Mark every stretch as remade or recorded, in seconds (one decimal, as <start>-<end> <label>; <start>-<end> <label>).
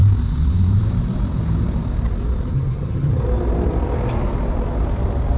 0.0-2.5 recorded; 2.5-3.2 remade; 3.2-5.4 recorded